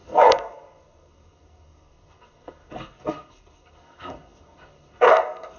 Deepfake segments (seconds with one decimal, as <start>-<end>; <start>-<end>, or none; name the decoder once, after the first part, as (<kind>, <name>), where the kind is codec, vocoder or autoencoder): 0.0-5.6 (codec, SNAC)